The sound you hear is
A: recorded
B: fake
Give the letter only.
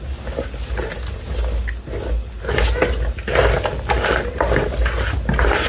A